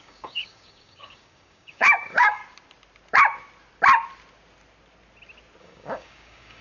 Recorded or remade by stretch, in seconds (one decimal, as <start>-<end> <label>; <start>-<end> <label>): 0.0-2.4 remade; 2.4-5.6 recorded; 5.6-6.6 remade